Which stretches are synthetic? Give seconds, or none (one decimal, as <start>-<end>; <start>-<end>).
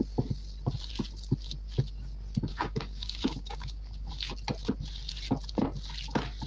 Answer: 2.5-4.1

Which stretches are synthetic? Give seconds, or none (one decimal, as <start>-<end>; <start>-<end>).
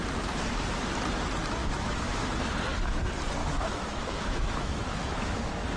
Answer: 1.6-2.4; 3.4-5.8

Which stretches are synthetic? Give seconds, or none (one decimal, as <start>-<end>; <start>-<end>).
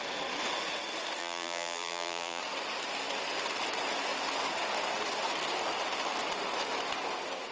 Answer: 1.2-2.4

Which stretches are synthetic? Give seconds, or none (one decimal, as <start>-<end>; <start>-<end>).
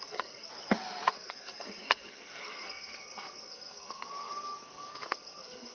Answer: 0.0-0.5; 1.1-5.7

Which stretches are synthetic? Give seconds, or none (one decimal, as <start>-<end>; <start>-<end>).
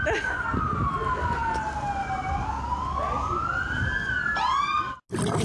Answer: none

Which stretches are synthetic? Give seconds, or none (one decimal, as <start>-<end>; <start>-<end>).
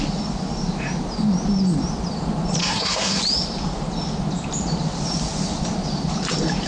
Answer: 2.6-3.2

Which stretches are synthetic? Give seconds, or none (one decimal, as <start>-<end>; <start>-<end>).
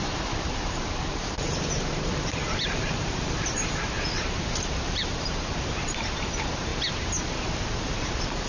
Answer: 0.0-6.7; 8.1-8.5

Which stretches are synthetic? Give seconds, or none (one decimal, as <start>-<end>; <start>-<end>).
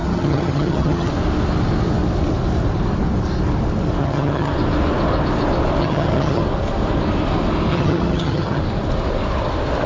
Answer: 0.0-1.1; 4.0-4.5; 5.8-6.4; 7.7-8.6